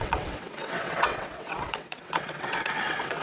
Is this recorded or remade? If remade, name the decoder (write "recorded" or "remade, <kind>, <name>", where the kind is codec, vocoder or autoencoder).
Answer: remade, vocoder, WaveNeXt